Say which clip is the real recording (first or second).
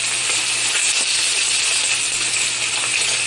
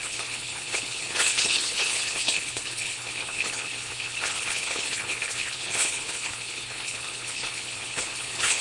first